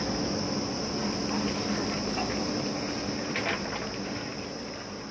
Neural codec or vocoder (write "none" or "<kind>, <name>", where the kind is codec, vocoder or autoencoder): none